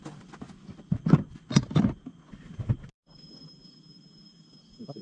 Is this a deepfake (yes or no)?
no